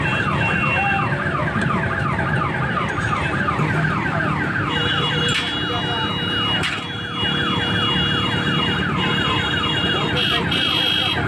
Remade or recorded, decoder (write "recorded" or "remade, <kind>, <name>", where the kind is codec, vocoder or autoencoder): recorded